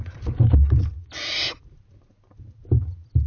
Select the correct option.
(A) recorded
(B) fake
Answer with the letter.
A